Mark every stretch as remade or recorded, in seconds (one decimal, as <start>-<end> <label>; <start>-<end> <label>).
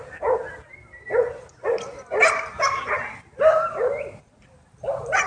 0.0-5.3 recorded